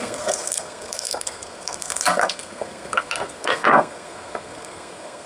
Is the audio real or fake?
fake